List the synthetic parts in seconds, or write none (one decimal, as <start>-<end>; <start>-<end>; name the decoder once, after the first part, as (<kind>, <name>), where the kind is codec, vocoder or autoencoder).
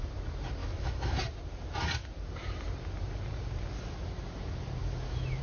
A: 0.6-1.2 (autoencoder, DAC-VAE); 4.8-5.4